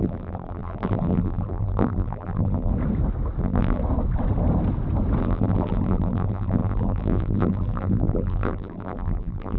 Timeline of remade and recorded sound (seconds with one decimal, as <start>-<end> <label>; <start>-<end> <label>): 0.0-2.7 remade; 2.7-3.4 recorded; 3.4-3.8 remade; 3.8-5.2 recorded; 5.2-9.6 remade